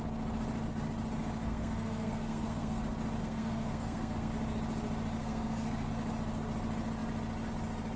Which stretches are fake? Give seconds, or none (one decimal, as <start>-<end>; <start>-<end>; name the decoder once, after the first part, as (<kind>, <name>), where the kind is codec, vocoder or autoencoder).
1.4-2.8 (codec, SNAC); 3.2-4.3; 5.2-5.9